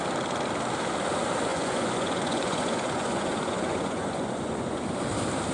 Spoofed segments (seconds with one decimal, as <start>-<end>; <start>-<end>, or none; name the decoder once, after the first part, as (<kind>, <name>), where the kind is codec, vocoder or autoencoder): 1.5-4.8 (vocoder, Vocos)